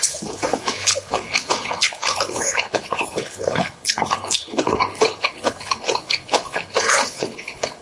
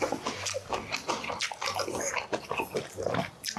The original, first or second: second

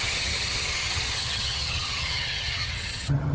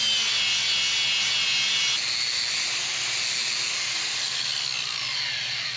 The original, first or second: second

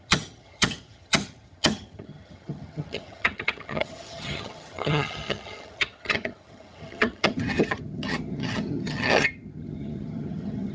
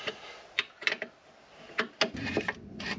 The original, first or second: second